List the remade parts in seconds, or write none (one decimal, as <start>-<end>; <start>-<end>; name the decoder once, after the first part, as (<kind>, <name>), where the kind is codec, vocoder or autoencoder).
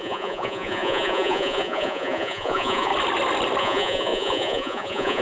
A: 0.0-2.9 (vocoder, Vocos); 3.6-5.2